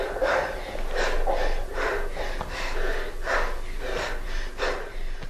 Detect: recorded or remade recorded